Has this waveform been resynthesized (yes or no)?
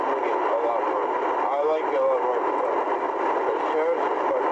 no